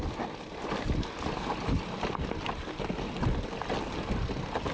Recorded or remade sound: recorded